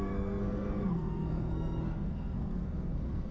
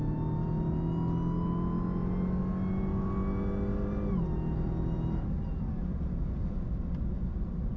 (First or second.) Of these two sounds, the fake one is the first